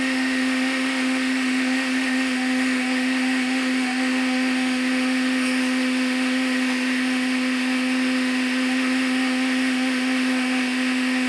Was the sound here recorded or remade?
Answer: remade